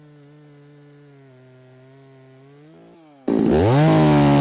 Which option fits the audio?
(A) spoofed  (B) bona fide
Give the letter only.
B